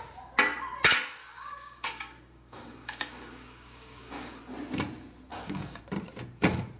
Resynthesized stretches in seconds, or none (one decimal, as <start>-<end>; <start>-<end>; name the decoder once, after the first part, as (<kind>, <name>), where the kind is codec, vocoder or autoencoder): 1.2-4.4 (codec, DAC); 5.3-5.8